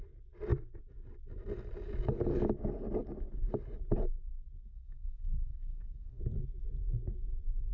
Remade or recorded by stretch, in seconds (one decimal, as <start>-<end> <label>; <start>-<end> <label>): 0.0-4.7 recorded; 4.7-6.2 remade; 6.2-7.7 recorded